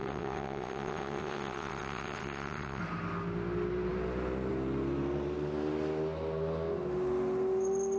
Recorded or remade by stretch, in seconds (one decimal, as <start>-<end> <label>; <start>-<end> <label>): 0.0-2.8 remade; 2.8-8.0 recorded